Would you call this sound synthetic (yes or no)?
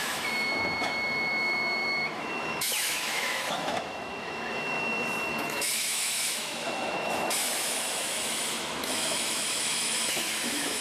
yes